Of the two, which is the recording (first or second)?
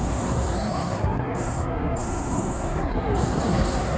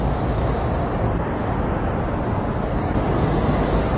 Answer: second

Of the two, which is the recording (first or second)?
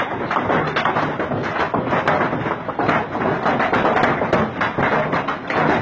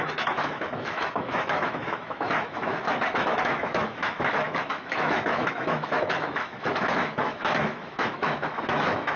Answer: first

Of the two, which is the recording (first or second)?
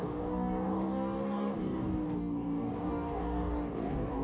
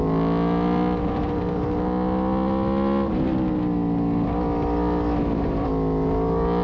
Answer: second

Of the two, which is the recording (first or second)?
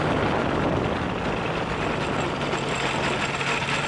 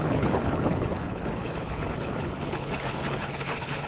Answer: first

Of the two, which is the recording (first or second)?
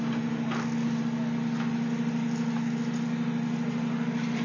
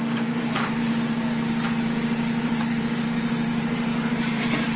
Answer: first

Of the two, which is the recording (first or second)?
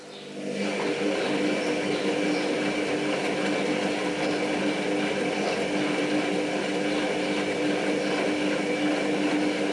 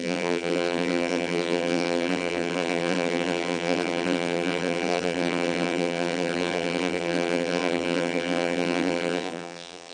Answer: first